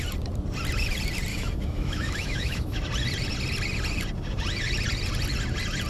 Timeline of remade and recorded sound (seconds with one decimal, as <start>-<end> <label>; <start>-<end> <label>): 0.0-1.3 recorded; 1.3-2.8 remade; 2.8-5.9 recorded